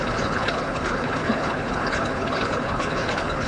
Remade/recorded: remade